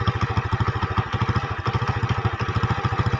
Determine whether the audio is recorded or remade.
remade